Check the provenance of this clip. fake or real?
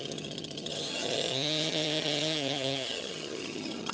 fake